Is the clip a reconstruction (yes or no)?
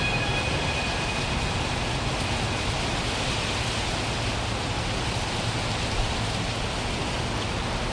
no